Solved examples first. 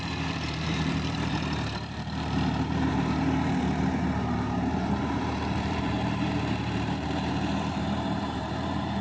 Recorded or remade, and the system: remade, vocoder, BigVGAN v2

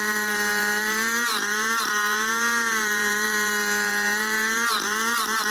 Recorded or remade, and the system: remade, vocoder, BigVGAN v2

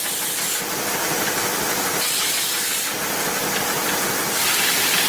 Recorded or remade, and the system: recorded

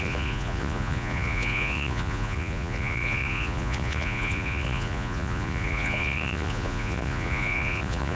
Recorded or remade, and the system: remade, vocoder, Vocos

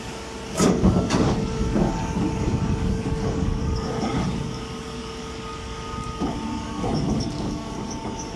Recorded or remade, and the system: remade, codec, DAC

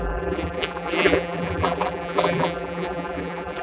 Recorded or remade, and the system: remade, vocoder, BigVGAN v2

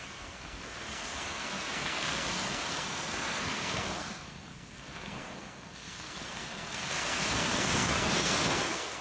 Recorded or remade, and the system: remade, codec, SNAC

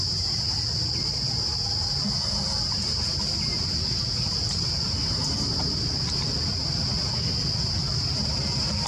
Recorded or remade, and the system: recorded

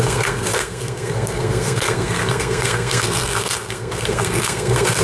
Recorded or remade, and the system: remade, codec, SNAC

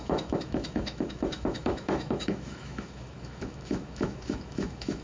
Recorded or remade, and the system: remade, autoencoder, DAC-VAE